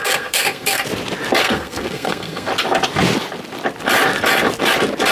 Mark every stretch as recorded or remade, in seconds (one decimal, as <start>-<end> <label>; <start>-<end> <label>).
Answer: 0.0-0.8 remade; 0.8-1.4 recorded; 1.4-2.5 remade; 2.5-5.1 recorded